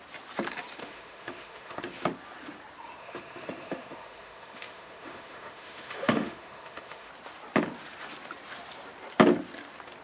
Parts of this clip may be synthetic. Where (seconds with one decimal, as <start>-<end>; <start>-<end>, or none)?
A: 0.8-1.8; 3.0-7.1